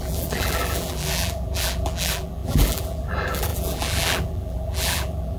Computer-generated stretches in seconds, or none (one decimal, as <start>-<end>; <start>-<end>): 0.0-5.4